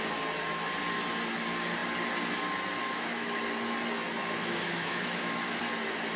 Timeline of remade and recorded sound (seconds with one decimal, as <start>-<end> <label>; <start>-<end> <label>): 0.0-2.8 recorded; 2.8-3.4 remade; 3.4-4.2 recorded; 4.2-5.6 remade; 5.6-6.2 recorded